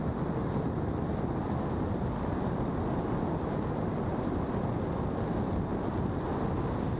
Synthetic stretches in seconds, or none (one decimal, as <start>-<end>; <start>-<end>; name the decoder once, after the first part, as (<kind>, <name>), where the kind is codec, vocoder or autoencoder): none